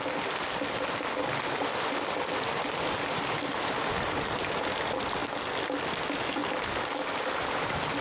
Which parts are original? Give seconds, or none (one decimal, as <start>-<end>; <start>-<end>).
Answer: 0.0-8.0